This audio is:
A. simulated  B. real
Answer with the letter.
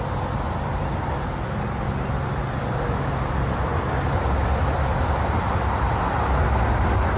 B